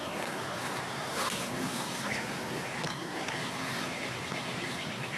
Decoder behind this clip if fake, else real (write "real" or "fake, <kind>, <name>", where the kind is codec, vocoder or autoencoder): fake, codec, SNAC